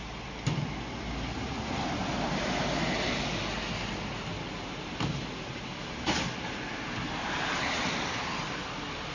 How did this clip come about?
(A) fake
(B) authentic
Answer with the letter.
B